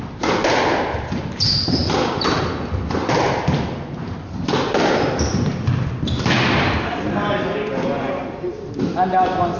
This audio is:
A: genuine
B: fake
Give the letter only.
A